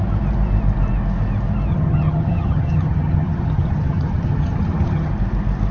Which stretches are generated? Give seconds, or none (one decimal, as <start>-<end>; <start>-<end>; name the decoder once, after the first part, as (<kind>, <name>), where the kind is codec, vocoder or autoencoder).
1.7-5.1 (vocoder, HiFi-GAN)